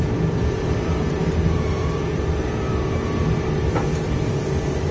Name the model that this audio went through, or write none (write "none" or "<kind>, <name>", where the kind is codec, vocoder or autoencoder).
vocoder, BigVGAN v2